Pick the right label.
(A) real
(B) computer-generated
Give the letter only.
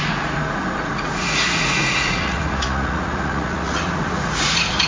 B